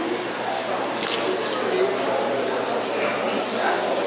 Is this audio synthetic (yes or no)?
no